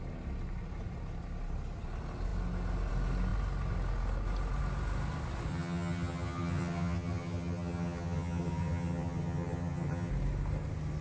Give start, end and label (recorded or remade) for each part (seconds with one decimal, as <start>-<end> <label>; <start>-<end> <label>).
0.0-5.5 recorded; 5.5-10.1 remade; 10.1-11.0 recorded